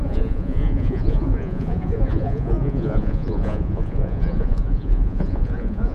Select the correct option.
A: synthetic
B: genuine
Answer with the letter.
A